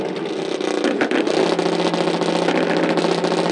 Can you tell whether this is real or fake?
real